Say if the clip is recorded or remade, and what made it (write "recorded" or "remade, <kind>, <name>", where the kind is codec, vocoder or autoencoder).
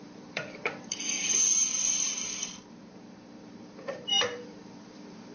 remade, vocoder, BigVGAN v2